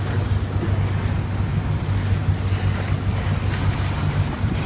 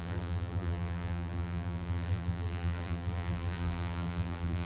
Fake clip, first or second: second